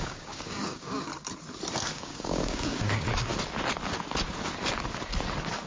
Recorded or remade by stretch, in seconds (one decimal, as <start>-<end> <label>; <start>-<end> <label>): 0.0-1.1 remade; 1.1-1.9 recorded; 1.9-3.3 remade; 3.3-5.7 recorded